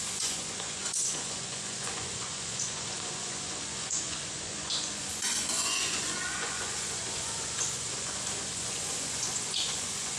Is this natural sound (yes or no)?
no